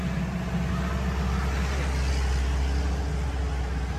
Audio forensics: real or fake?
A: real